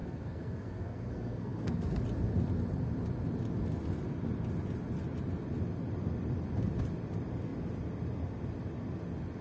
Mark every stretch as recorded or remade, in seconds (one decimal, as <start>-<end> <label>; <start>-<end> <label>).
0.0-2.0 remade; 2.0-9.4 recorded